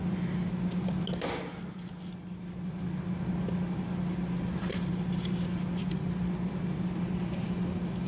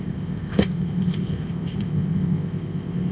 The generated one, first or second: second